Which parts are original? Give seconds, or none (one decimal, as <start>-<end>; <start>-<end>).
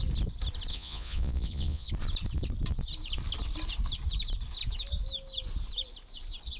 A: 0.0-0.7; 1.9-6.6